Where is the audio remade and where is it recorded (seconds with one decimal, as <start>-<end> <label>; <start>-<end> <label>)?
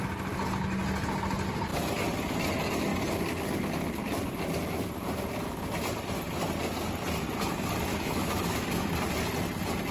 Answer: 0.0-7.9 recorded; 7.9-8.9 remade; 8.9-9.9 recorded